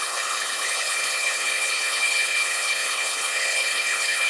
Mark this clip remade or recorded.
remade